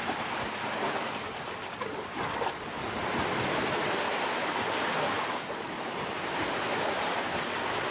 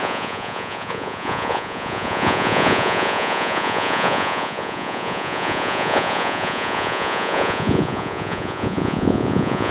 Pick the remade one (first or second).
second